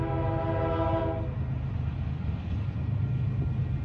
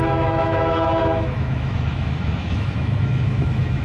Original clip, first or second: first